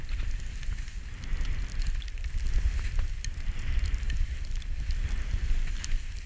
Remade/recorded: recorded